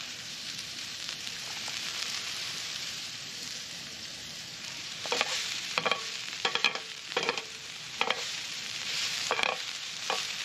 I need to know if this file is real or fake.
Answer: fake